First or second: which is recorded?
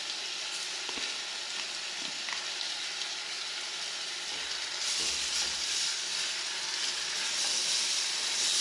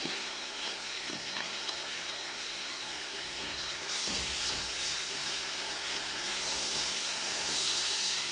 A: first